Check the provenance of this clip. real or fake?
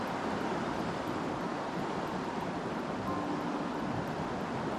real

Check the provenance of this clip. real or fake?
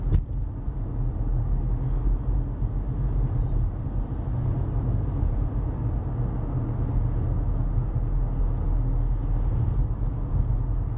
real